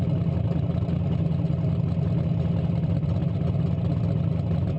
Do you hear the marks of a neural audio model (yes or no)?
no